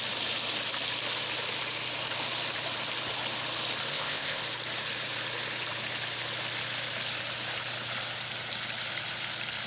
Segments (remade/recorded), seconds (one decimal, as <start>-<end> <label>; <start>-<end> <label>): 0.0-3.9 recorded; 3.9-4.4 remade; 4.4-9.7 recorded